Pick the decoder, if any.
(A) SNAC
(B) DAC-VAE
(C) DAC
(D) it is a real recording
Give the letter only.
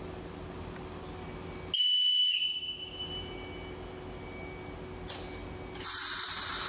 D